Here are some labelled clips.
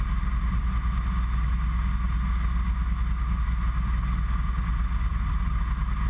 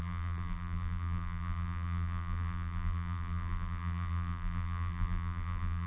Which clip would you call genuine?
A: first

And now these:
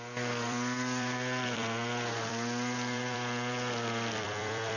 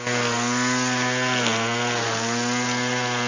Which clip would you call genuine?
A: second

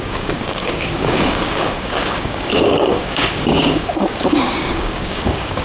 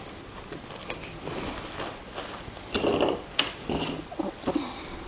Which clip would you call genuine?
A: second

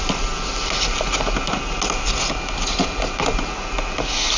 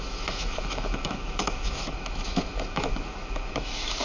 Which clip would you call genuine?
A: first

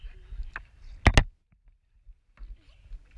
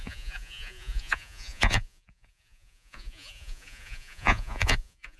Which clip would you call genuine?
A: first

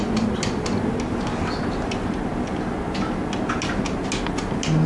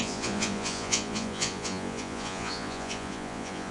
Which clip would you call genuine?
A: first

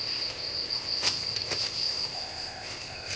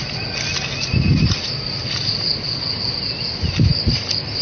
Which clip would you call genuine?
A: second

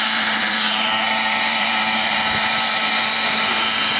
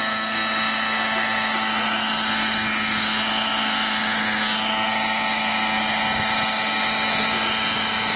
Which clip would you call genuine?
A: second